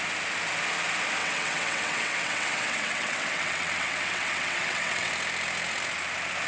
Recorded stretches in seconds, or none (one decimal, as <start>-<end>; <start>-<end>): 0.0-1.2; 5.1-6.5